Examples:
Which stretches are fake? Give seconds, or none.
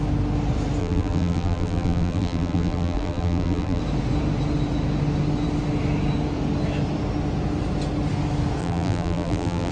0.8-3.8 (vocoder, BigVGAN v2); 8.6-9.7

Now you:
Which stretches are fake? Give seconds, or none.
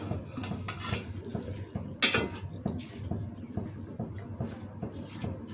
none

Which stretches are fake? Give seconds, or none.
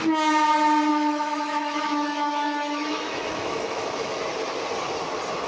0.9-4.2 (autoencoder, DAC-VAE)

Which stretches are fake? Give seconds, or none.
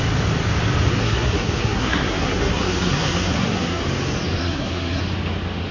0.9-3.8 (codec, SNAC); 4.4-5.0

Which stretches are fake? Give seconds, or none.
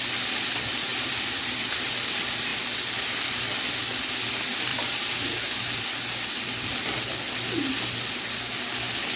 0.9-1.9 (vocoder, BigVGAN v2); 4.7-5.8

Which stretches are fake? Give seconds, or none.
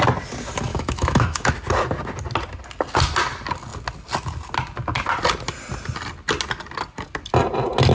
0.7-1.5 (autoencoder, DAC-VAE)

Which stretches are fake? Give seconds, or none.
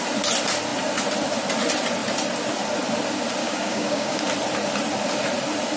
3.4-4.2 (codec, DAC)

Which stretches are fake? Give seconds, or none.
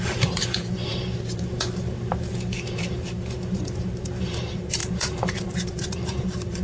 0.0-6.6 (vocoder, BigVGAN v2)